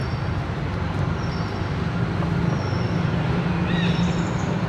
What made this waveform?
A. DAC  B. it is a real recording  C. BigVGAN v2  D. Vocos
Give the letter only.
B